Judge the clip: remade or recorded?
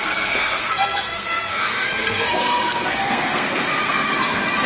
remade